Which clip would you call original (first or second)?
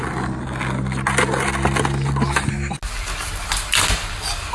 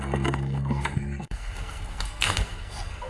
first